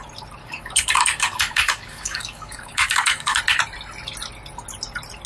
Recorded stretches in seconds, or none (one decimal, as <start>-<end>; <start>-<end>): 0.0-0.4; 3.4-5.3